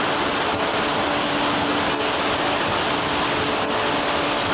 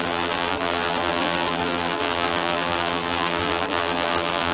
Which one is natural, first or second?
first